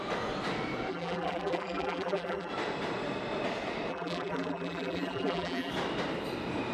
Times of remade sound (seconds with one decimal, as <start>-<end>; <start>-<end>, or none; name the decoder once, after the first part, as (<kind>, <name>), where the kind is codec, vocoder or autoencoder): 0.9-2.5 (vocoder, BigVGAN v2); 3.9-5.7